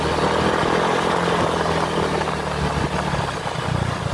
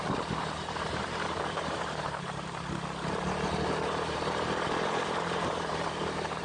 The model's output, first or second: second